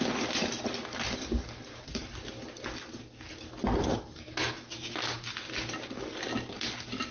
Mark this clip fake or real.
real